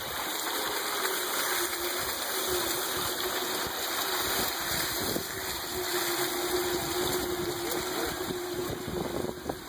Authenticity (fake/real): real